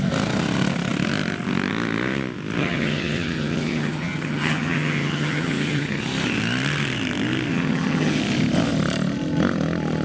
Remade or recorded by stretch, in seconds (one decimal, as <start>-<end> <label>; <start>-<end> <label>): 0.0-2.6 recorded; 2.6-6.0 remade; 6.0-7.5 recorded; 7.5-8.2 remade; 8.2-10.0 recorded